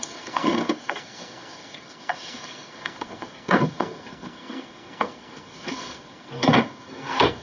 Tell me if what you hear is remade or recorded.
remade